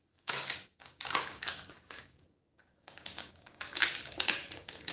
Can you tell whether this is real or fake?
fake